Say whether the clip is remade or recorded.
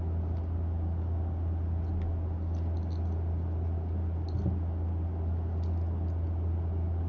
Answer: recorded